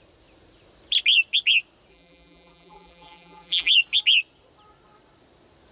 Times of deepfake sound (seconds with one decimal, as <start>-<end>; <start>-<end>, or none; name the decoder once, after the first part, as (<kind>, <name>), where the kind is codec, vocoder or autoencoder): 1.9-3.7 (vocoder, BigVGAN v2)